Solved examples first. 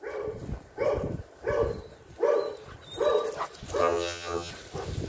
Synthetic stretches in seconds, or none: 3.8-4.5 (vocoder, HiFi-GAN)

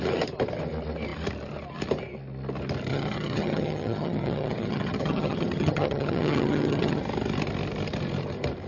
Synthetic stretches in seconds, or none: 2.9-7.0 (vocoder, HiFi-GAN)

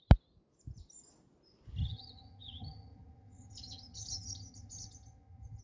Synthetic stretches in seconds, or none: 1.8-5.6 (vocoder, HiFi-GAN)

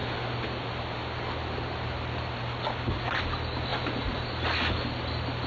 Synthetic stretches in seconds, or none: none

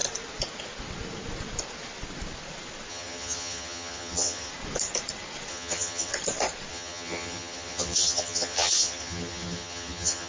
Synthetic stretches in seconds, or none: 2.9-4.5 (vocoder, HiFi-GAN); 5.5-6.1; 6.7-10.3

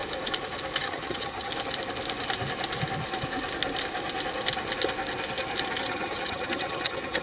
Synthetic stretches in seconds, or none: 0.8-1.5 (vocoder, HiFi-GAN); 5.8-7.2

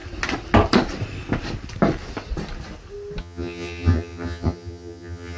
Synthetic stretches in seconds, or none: 3.2-5.4 (vocoder, HiFi-GAN)